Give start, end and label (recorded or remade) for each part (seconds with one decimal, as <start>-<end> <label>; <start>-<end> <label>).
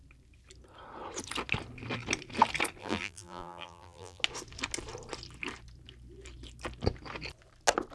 0.0-2.8 recorded; 2.8-4.2 remade; 4.2-7.9 recorded